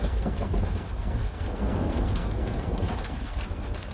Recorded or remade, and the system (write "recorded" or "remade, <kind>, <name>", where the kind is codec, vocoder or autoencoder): remade, codec, SNAC